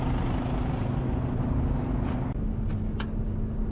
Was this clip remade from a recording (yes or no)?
no